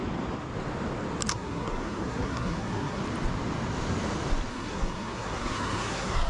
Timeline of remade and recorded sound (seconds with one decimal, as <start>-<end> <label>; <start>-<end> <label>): 0.0-1.3 recorded; 1.3-3.0 remade; 3.0-4.5 recorded; 4.5-6.3 remade